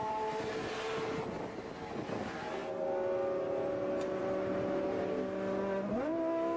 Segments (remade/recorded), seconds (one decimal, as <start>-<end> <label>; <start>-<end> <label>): 0.0-6.6 recorded